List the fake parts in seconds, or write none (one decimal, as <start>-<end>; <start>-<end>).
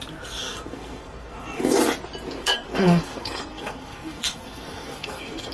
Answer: 0.4-1.8; 2.4-5.5